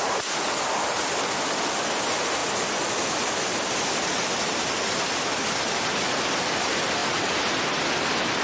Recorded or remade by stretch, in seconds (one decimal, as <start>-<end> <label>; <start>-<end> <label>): 0.0-8.4 recorded